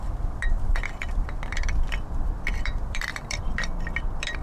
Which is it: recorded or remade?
remade